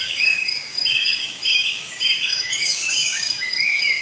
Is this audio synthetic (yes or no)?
yes